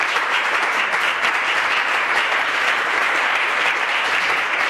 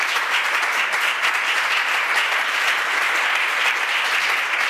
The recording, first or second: second